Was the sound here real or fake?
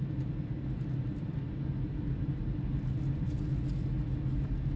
real